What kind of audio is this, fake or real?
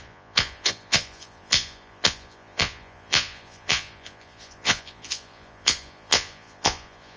fake